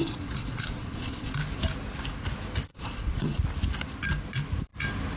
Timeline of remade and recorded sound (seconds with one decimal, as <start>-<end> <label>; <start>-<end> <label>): 0.0-1.3 remade; 1.3-2.7 recorded; 2.7-3.4 remade; 3.4-5.2 recorded